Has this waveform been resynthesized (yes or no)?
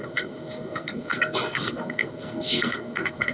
yes